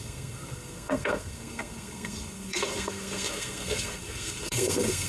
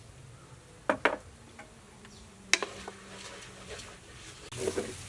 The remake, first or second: first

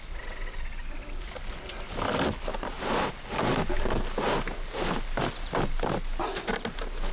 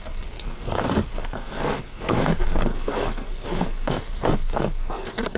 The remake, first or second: second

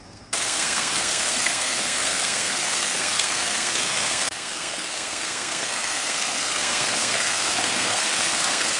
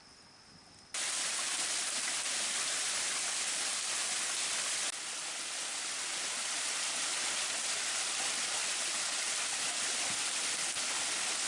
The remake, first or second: first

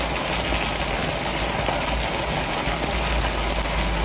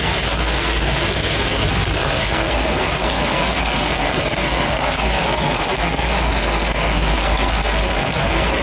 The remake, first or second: second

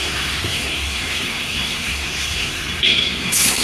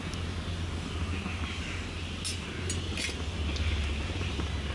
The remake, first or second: first